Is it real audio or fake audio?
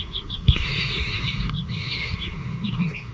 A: fake